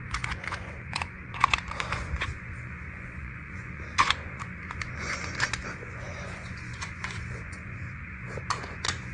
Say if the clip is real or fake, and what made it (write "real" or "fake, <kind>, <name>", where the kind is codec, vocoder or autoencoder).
fake, vocoder, Vocos